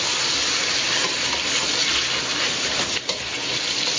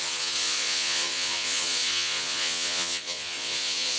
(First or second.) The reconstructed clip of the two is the second